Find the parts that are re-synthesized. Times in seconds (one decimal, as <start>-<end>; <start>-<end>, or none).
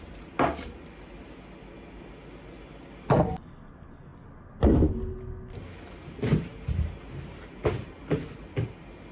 none